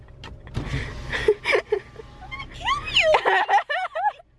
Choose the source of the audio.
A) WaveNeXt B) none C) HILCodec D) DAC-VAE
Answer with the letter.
B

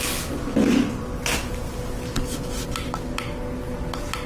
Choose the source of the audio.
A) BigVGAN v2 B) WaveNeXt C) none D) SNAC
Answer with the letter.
C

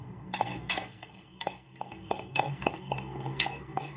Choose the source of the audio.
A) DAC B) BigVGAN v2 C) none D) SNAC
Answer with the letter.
D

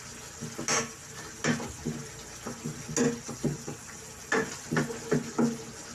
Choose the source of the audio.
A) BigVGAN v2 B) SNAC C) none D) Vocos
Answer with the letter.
C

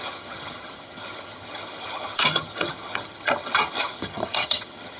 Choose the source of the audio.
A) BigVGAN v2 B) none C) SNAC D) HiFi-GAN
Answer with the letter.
D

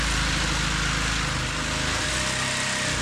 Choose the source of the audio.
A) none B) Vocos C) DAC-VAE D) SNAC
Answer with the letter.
A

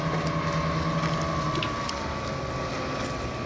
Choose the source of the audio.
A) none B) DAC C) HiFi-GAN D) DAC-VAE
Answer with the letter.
A